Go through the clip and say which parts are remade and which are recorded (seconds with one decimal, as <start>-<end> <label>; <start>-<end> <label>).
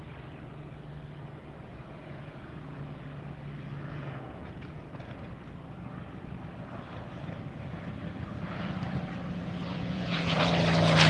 0.0-1.7 recorded; 1.7-2.8 remade; 2.8-3.9 recorded; 3.9-4.8 remade; 4.8-9.7 recorded; 9.7-10.4 remade; 10.4-11.1 recorded